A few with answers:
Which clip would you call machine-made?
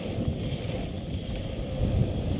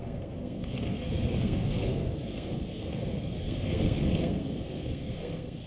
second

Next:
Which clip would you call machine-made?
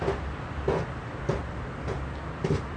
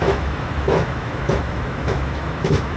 second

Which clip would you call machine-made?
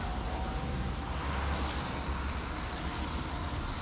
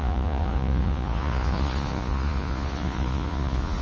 second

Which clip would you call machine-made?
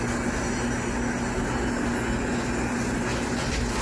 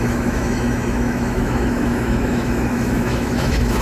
second